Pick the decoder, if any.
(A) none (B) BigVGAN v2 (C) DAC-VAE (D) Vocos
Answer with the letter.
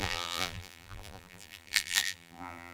B